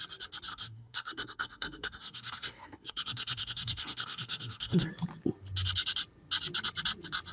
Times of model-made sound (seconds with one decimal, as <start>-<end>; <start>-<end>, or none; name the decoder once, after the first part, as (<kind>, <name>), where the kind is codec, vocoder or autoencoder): 0.5-4.9 (codec, SNAC)